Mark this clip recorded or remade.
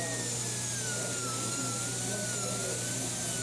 recorded